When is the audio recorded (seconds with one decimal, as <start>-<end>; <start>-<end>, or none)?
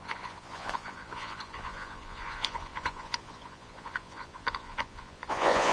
none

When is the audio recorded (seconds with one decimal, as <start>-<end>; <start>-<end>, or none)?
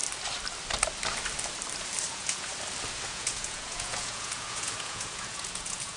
0.0-2.1; 2.5-3.1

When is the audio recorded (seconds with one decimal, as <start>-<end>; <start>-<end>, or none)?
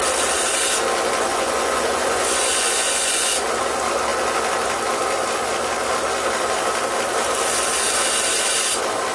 0.0-1.3; 3.3-9.1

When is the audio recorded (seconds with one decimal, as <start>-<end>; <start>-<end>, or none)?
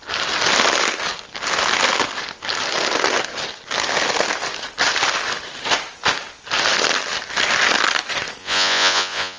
0.0-8.4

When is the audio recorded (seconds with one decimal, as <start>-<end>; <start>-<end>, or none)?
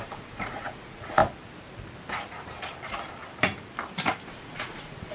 1.2-4.3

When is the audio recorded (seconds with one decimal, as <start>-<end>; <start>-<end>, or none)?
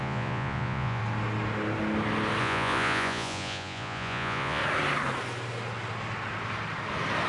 1.0-2.4; 4.6-7.3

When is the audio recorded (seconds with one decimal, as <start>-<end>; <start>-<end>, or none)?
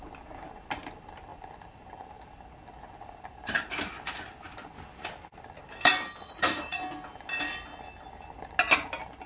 0.0-6.2; 6.8-9.3